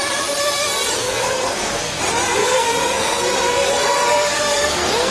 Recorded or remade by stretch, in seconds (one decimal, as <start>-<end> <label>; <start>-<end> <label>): 0.0-1.0 recorded; 1.0-2.0 remade; 2.0-2.4 recorded; 2.4-5.1 remade